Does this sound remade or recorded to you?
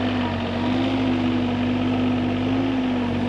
recorded